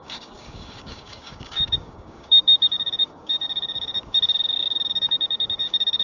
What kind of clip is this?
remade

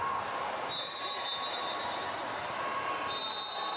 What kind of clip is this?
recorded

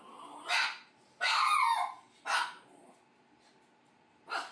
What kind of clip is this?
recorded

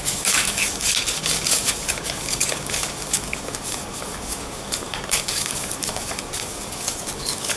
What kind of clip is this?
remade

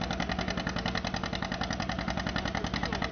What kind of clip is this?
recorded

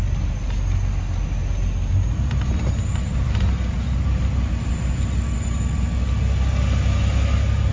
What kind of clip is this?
recorded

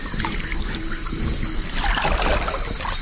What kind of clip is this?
recorded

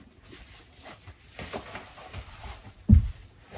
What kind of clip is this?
recorded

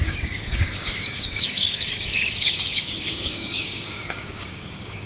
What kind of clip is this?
remade